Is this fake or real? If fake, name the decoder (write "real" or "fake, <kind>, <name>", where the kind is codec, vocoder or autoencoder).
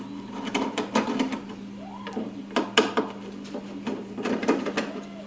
fake, vocoder, BigVGAN v2